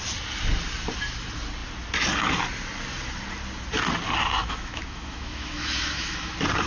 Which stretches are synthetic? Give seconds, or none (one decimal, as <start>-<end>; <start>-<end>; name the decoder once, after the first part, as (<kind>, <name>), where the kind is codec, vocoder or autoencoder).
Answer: 4.4-6.3 (autoencoder, DAC-VAE)

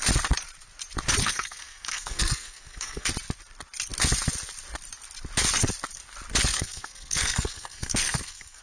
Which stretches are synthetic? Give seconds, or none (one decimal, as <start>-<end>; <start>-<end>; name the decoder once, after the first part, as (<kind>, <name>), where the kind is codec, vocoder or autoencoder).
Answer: 1.2-3.1 (codec, SNAC); 6.5-8.6

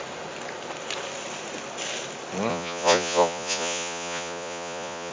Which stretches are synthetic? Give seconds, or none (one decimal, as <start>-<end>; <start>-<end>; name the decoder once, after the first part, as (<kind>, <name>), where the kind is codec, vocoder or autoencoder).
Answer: 2.5-5.1 (vocoder, Vocos)

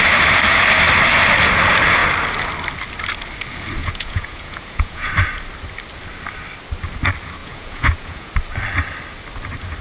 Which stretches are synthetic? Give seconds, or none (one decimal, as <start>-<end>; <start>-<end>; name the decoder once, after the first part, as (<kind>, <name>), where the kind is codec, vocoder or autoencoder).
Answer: 3.8-5.1 (vocoder, Vocos); 7.4-8.3

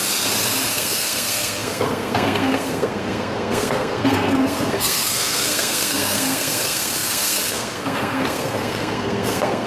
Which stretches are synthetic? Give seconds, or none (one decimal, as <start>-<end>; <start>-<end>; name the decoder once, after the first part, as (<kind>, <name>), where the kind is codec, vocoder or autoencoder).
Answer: 0.7-9.7 (codec, SNAC)

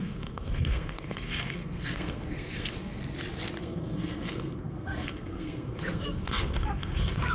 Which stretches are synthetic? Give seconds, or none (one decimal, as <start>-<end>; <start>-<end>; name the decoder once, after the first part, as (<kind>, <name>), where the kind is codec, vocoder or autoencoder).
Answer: 0.0-3.0 (codec, SNAC); 3.6-7.3

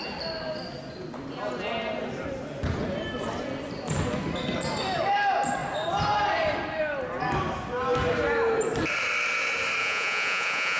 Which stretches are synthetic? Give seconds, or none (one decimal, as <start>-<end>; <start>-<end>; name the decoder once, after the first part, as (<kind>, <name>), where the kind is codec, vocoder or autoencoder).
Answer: 9.8-10.8 (vocoder, Vocos)